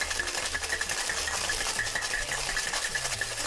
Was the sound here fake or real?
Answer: real